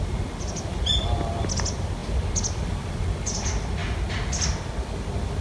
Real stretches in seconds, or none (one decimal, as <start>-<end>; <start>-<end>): 0.0-5.4